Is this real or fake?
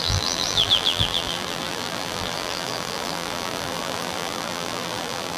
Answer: fake